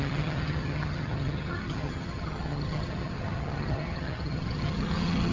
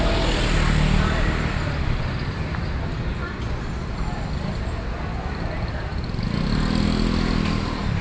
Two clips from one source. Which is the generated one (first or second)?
first